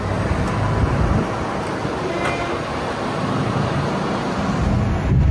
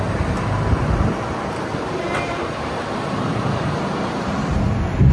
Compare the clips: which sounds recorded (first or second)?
first